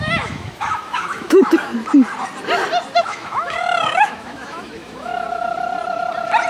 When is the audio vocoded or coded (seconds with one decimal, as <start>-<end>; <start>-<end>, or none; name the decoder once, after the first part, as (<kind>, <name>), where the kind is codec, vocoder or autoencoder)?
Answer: 0.0-1.7 (autoencoder, DAC-VAE); 3.0-5.1